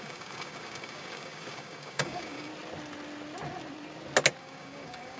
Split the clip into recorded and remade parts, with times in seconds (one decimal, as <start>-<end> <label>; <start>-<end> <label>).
0.0-2.5 remade; 2.5-4.4 recorded; 4.4-5.2 remade